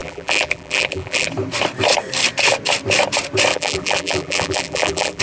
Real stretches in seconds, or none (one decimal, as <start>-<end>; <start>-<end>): 1.3-3.5